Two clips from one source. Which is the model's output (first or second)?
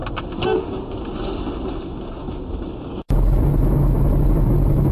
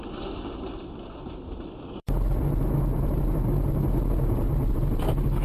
second